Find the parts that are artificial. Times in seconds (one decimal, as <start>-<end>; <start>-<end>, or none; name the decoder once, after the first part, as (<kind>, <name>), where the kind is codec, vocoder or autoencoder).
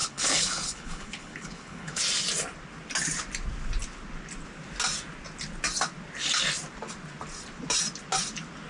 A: 0.0-2.0 (codec, HILCodec)